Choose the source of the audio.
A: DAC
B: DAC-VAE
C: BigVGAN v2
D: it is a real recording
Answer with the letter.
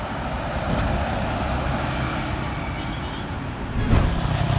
D